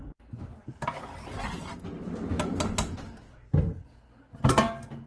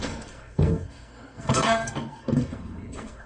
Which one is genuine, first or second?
first